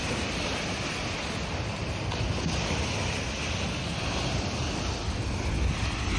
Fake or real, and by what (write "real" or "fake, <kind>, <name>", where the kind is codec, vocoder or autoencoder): real